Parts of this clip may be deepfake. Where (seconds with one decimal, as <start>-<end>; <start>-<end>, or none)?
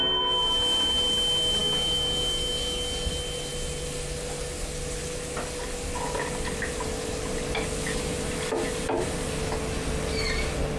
1.6-3.1